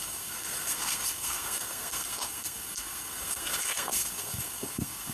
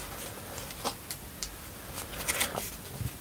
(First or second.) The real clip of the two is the second